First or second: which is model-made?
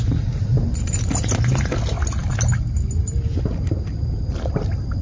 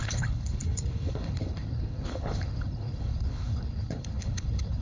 second